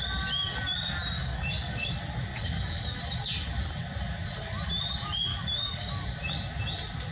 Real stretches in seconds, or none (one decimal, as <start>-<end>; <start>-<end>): 0.0-1.2; 1.9-2.3; 3.0-5.3; 5.9-7.1